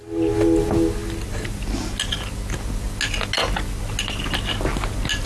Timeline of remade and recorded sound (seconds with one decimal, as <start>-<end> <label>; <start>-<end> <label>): 0.0-5.3 recorded